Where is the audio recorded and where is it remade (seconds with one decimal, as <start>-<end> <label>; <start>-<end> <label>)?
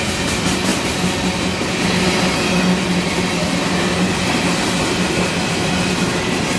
0.0-6.6 recorded